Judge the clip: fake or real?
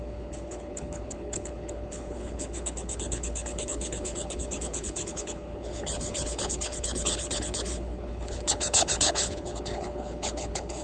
fake